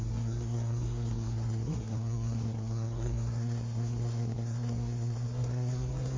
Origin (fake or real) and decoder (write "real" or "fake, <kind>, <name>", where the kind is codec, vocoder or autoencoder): fake, codec, SNAC